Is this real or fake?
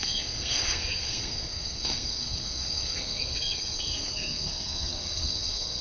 fake